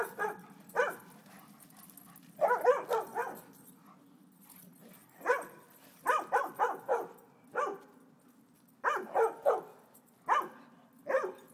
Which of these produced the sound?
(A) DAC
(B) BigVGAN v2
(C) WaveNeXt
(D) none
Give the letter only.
D